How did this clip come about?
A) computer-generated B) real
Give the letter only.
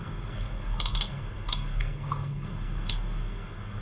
A